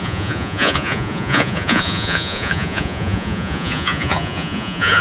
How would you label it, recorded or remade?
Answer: remade